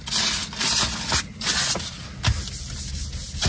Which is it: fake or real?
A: real